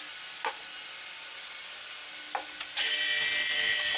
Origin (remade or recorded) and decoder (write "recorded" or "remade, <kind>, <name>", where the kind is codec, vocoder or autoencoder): recorded